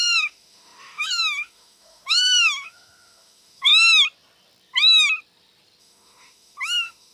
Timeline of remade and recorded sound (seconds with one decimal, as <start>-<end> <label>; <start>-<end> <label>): 0.0-3.7 remade; 3.7-5.8 recorded; 5.8-7.1 remade